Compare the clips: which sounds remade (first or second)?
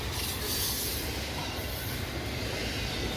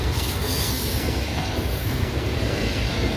second